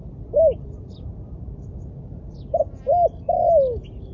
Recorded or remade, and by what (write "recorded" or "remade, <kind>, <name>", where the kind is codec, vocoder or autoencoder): recorded